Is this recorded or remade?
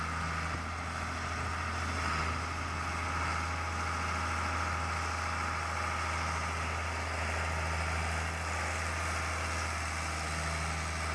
recorded